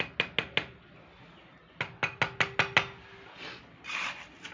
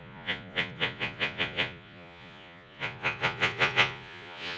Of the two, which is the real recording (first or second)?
first